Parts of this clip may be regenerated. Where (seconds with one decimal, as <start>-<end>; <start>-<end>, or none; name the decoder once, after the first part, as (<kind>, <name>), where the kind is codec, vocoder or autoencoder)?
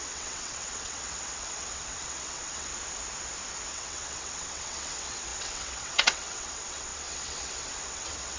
0.0-2.7 (vocoder, WaveNeXt); 3.7-8.4